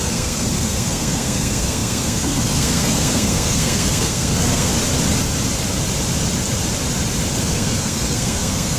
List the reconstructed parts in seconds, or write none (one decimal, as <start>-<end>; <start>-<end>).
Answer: 0.0-4.7; 7.4-8.8